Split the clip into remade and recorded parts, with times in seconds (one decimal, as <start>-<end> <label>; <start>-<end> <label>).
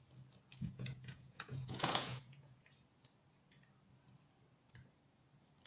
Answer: 0.0-0.5 recorded; 0.5-2.6 remade; 2.6-5.7 recorded